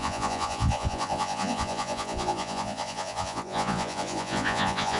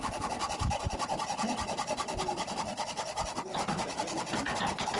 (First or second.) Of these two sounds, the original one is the second